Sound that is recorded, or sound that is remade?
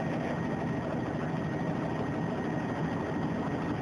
recorded